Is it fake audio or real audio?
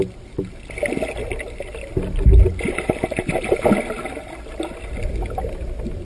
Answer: real